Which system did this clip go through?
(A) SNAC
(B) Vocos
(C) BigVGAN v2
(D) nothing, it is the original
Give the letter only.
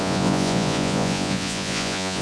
B